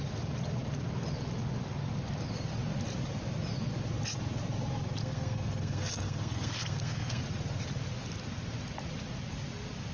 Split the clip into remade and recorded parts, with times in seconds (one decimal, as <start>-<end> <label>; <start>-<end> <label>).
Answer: 0.0-5.0 recorded; 5.0-7.2 remade; 7.2-9.9 recorded